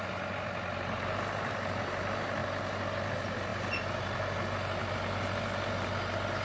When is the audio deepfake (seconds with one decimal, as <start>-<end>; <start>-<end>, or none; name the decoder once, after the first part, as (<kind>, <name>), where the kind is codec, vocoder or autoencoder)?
none